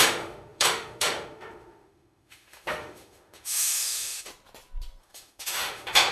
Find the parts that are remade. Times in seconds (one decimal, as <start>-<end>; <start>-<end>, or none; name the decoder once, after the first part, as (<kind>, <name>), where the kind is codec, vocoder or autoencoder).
0.0-4.3 (autoencoder, DAC-VAE); 5.0-6.1